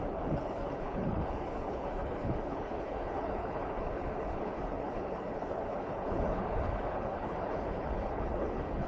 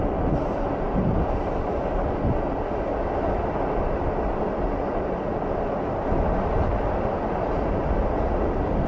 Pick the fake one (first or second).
first